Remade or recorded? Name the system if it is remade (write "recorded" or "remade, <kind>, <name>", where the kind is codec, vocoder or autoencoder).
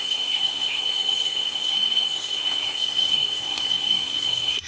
remade, codec, SNAC